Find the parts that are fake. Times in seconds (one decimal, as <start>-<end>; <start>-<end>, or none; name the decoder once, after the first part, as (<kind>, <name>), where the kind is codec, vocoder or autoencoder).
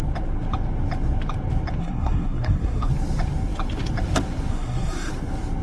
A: 1.8-2.9 (codec, SNAC); 4.5-5.1